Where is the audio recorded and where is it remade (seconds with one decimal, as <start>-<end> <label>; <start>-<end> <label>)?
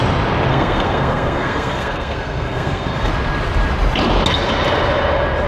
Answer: 0.0-0.5 recorded; 0.5-3.1 remade; 3.1-5.5 recorded